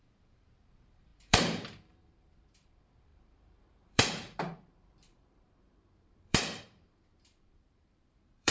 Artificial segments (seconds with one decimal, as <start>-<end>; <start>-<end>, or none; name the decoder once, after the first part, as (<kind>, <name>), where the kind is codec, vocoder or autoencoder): 0.0-8.5 (vocoder, BigVGAN v2)